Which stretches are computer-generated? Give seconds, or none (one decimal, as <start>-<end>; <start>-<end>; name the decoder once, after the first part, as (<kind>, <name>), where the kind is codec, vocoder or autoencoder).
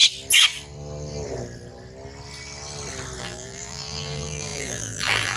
3.2-5.4 (vocoder, BigVGAN v2)